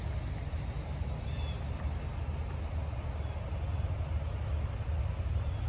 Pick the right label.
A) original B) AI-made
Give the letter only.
A